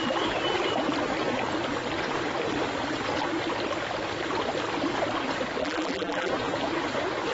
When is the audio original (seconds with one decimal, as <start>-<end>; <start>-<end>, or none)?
0.0-5.6; 6.3-7.3

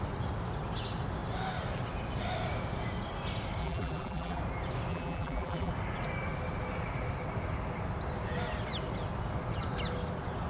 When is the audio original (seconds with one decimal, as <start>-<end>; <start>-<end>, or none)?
0.0-3.6; 4.4-4.9; 5.7-10.5

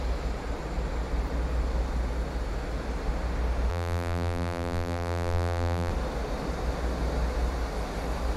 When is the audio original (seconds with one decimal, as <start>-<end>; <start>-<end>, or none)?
0.0-3.7; 5.9-8.4

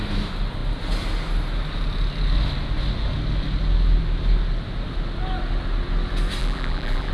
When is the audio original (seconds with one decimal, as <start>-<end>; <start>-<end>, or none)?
0.0-6.4

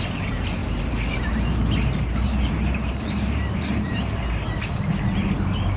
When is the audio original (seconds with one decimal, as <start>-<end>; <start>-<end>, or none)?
0.0-0.6; 4.1-5.8

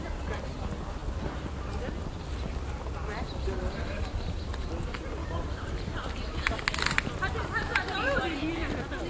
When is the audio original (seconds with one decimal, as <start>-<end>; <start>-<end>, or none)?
0.0-5.2; 6.2-7.7; 8.2-9.1

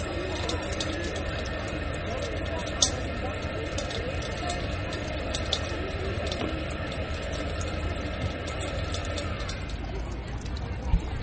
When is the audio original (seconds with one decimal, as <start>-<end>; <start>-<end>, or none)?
9.0-11.2